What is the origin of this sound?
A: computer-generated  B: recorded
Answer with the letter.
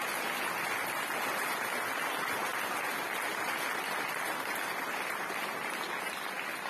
B